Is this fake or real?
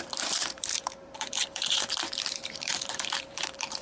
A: fake